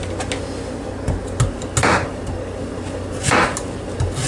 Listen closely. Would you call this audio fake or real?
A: real